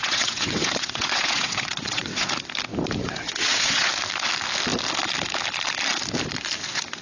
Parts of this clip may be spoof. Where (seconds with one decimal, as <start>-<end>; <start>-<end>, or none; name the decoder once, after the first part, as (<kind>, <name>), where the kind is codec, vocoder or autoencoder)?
0.0-2.3 (vocoder, WaveNeXt); 3.0-3.9